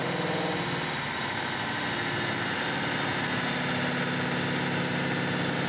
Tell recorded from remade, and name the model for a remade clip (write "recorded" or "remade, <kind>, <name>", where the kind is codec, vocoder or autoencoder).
recorded